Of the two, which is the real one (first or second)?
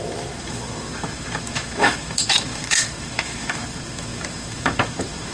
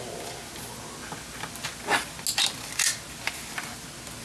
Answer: second